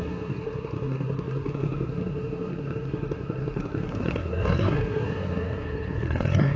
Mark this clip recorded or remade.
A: remade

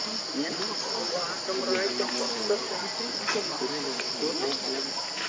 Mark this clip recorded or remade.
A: recorded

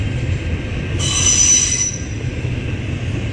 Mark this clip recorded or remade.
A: recorded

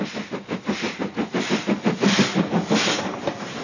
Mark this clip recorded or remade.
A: recorded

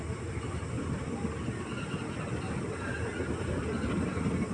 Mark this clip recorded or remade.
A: recorded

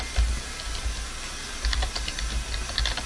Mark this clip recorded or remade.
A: recorded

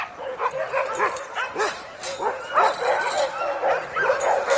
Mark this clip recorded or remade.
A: recorded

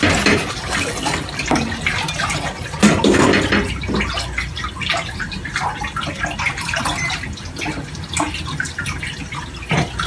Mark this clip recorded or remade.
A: recorded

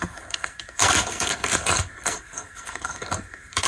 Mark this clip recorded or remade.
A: remade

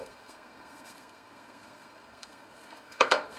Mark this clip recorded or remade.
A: remade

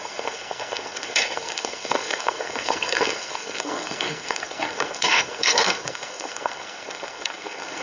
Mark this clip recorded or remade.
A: remade